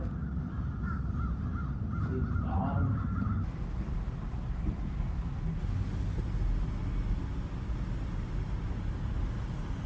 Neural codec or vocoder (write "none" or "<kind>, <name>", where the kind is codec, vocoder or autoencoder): none